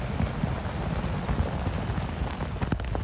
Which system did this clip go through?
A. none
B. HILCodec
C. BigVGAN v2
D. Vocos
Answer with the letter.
A